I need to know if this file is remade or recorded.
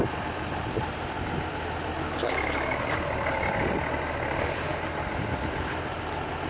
recorded